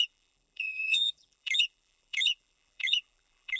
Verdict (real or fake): fake